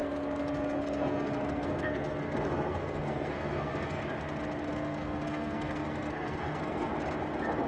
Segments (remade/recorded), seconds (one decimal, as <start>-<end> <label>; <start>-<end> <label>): 0.0-4.0 remade; 4.0-4.7 recorded; 4.7-6.9 remade; 6.9-7.7 recorded